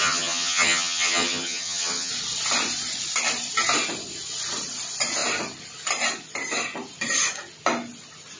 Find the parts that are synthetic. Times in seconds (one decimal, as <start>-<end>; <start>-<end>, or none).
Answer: 0.0-2.1